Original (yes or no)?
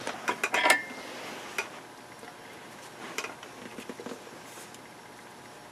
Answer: yes